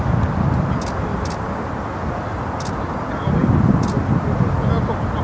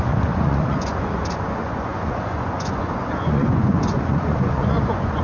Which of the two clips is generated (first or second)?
second